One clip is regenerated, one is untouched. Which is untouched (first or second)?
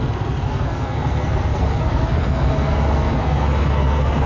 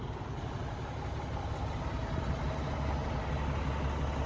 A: second